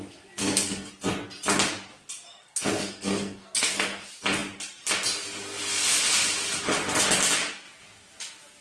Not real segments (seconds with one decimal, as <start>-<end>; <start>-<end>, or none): 0.4-0.9; 2.4-4.0